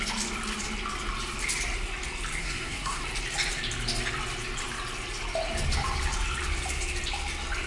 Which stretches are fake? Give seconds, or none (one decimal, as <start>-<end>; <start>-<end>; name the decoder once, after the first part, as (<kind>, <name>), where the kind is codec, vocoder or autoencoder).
2.4-3.0 (codec, SNAC)